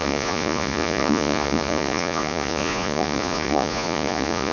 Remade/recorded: remade